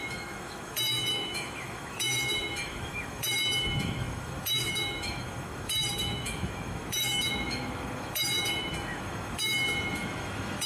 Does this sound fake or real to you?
fake